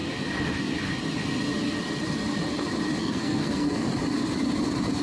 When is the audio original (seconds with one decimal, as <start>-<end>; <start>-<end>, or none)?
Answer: 0.0-3.0; 3.9-5.0